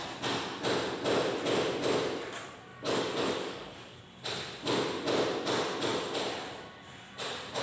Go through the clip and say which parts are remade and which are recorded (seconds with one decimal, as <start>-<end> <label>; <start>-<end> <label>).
0.0-2.7 recorded; 2.7-4.0 remade; 4.0-7.6 recorded